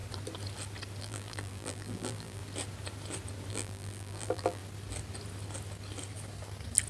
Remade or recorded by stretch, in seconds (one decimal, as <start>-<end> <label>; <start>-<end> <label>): 0.0-1.0 recorded; 1.0-2.4 remade; 2.4-3.5 recorded; 3.5-4.6 remade; 4.6-6.9 recorded